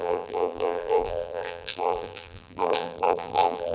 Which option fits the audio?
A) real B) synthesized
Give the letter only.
B